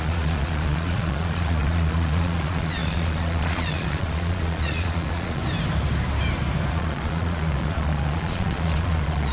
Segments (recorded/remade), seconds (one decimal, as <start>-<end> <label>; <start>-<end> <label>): 0.0-5.4 remade; 5.4-6.7 recorded; 6.7-9.3 remade